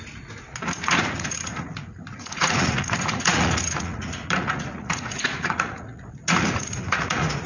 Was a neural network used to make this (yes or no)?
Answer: yes